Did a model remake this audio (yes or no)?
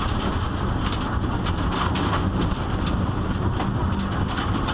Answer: no